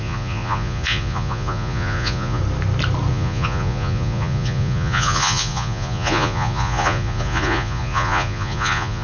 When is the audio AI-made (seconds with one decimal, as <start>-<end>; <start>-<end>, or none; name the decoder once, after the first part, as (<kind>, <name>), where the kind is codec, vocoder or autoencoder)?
0.0-2.4 (vocoder, Vocos); 3.1-9.0